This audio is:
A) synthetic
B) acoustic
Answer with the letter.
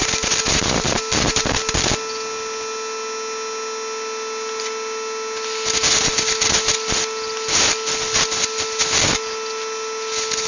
B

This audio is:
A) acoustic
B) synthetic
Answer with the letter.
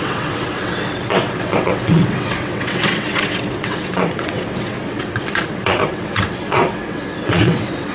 B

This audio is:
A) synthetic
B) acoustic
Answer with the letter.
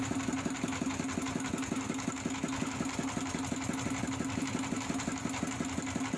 B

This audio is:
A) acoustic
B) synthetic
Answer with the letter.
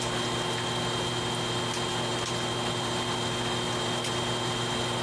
A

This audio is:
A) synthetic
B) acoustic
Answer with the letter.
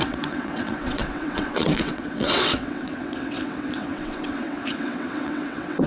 A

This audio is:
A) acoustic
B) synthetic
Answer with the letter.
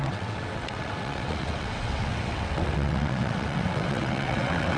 B